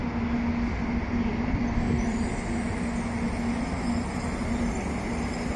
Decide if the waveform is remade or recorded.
recorded